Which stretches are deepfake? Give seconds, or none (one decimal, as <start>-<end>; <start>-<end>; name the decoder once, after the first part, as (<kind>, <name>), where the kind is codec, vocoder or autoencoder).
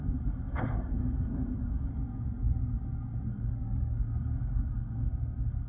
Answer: 0.0-1.9 (codec, SNAC); 3.3-5.7